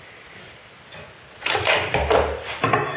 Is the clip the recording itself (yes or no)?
yes